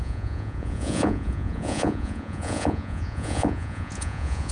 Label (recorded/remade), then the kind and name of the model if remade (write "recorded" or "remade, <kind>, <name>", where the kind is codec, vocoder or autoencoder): remade, vocoder, Vocos